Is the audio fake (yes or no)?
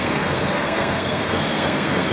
yes